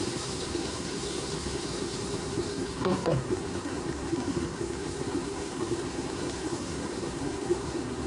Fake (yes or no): yes